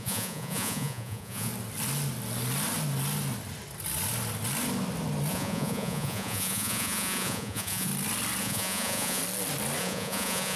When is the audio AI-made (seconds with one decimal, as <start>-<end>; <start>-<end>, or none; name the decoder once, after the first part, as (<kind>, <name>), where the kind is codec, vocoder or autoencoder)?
0.0-1.5 (vocoder, Vocos); 5.3-7.9; 8.4-9.2; 9.8-10.6